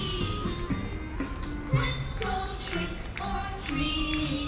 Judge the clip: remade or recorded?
recorded